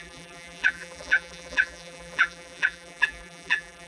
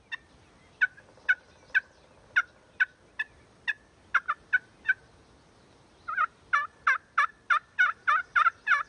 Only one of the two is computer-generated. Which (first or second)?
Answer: first